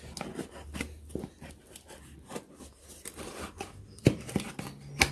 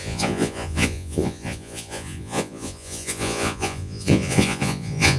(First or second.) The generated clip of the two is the second